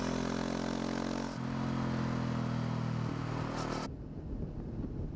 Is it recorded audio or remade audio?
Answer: recorded